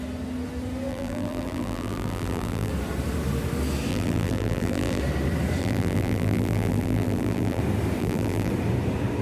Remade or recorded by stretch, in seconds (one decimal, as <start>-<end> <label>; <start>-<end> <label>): 0.0-0.9 recorded; 0.9-2.7 remade; 2.7-3.9 recorded; 3.9-5.0 remade; 5.0-5.6 recorded; 5.6-7.6 remade; 7.6-8.0 recorded; 8.0-8.5 remade; 8.5-9.2 recorded